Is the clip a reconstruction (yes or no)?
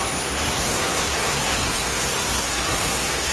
yes